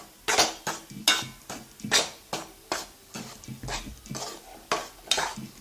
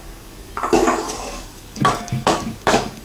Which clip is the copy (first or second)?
second